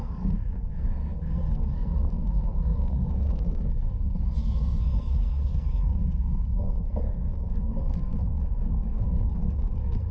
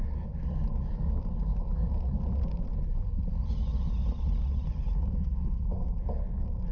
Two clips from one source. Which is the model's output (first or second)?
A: first